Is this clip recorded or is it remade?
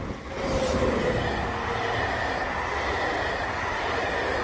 recorded